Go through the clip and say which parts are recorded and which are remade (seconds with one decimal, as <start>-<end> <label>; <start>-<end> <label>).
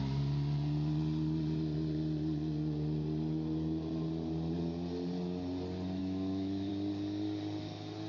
0.0-6.0 recorded; 6.0-6.7 remade; 6.7-8.1 recorded